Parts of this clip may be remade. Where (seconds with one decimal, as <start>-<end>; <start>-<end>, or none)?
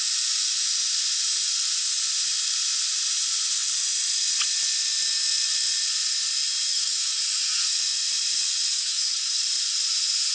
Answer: 6.7-7.2; 8.7-9.4